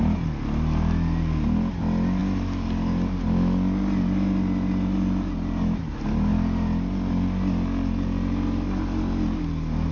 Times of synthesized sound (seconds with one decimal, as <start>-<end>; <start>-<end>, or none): none